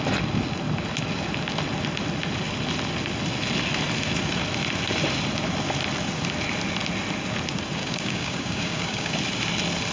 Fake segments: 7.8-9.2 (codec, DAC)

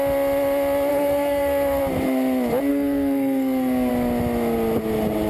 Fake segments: 0.9-1.8 (codec, SNAC); 2.7-3.9

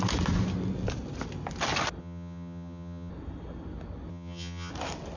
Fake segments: 2.0-3.1 (vocoder, HiFi-GAN); 4.1-4.7

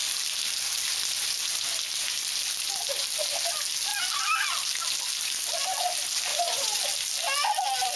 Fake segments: 6.3-6.8 (vocoder, Vocos)

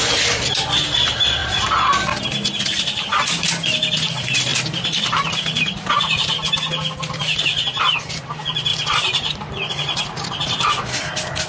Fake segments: 1.4-2.2 (vocoder, BigVGAN v2); 4.5-5.3; 8.7-9.7

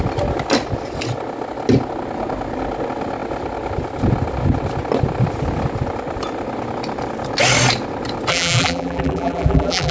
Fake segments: 8.3-9.9 (vocoder, BigVGAN v2)

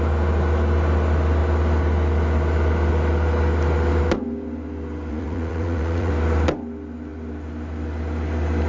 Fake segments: 5.1-6.1 (vocoder, Vocos)

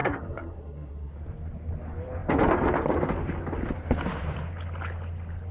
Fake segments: 0.0-1.1 (codec, SNAC)